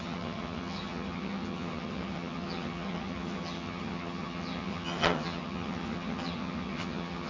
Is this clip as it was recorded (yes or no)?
no